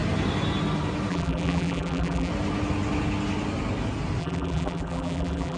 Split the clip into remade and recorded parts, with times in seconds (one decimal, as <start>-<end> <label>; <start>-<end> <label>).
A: 0.0-1.1 recorded; 1.1-2.3 remade; 2.3-4.2 recorded; 4.2-5.6 remade